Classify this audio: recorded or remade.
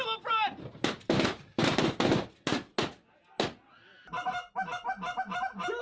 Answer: recorded